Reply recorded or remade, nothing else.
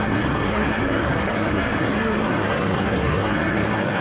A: remade